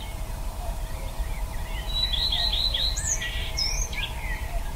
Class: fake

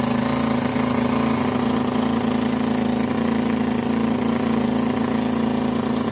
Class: real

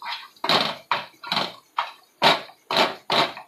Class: real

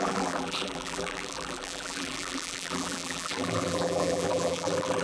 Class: fake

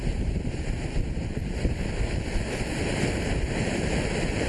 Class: fake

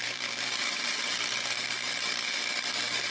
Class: fake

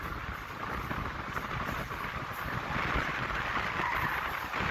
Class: real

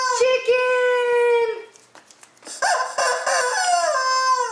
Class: real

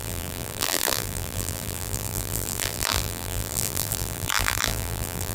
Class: fake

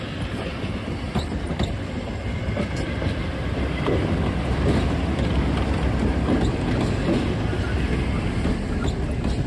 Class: real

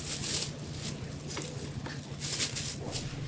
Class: real